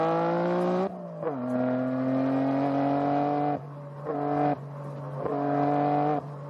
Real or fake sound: real